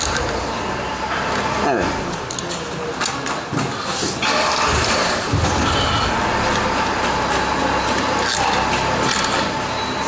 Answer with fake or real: real